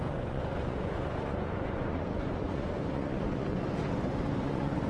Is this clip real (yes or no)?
no